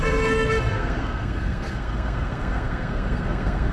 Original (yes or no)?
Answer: no